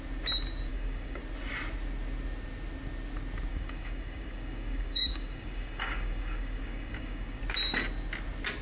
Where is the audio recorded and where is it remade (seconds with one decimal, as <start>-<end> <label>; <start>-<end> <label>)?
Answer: 0.0-0.7 recorded; 0.7-1.2 remade; 1.2-3.5 recorded; 3.5-7.4 remade; 7.4-8.6 recorded